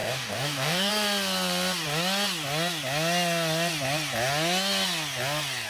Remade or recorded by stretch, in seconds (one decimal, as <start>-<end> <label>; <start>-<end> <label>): 0.0-0.9 remade; 0.9-5.7 recorded